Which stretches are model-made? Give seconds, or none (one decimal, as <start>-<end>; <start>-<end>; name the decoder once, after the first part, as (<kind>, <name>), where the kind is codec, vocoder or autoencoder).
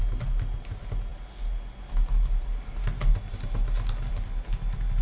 none